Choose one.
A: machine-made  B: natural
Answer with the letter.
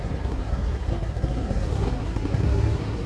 A